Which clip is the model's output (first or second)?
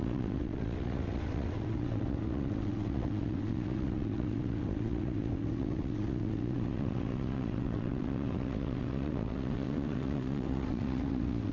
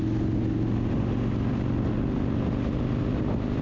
first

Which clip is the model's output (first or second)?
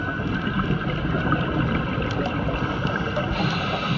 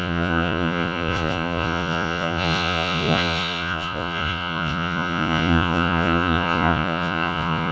second